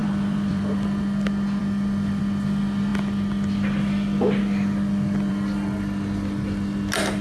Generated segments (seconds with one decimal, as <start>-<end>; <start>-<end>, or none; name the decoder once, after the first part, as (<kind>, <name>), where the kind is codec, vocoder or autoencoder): 0.0-1.0 (vocoder, BigVGAN v2)